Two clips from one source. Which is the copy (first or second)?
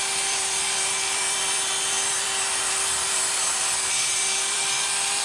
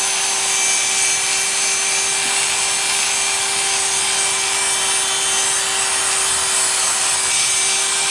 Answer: first